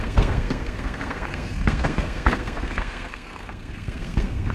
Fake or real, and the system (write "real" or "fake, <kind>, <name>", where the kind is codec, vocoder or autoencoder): fake, codec, SNAC